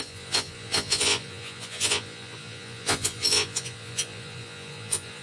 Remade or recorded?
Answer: remade